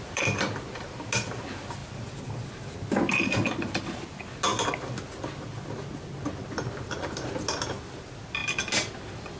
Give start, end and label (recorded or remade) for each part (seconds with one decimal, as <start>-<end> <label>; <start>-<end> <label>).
0.0-9.4 recorded

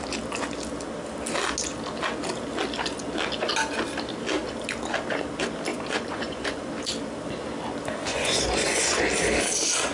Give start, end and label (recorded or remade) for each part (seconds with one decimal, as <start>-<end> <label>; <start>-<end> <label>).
0.0-5.7 recorded; 5.7-6.7 remade; 6.7-8.1 recorded; 8.1-9.0 remade; 9.0-9.9 recorded

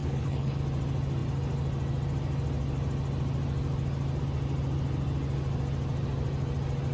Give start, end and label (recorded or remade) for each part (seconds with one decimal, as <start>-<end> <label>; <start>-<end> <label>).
0.0-0.6 remade; 0.6-6.9 recorded

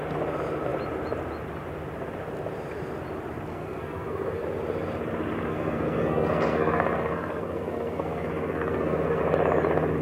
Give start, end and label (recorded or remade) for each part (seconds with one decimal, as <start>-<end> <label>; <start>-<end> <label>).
0.0-3.5 recorded; 3.5-4.4 remade; 4.4-5.5 recorded; 5.5-9.2 remade; 9.2-10.0 recorded